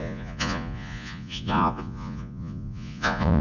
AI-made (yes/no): yes